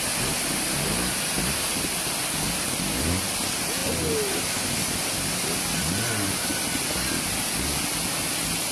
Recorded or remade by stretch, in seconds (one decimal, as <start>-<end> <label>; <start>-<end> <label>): 0.0-6.5 recorded; 6.5-7.4 remade; 7.4-8.7 recorded